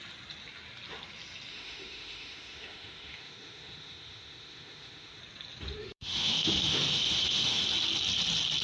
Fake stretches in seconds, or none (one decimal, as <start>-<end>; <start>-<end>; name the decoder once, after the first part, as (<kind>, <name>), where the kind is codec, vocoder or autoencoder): 1.5-5.2 (autoencoder, DAC-VAE); 5.8-7.6